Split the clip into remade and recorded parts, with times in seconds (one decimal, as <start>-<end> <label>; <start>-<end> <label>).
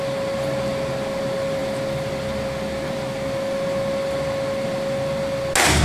0.0-5.8 recorded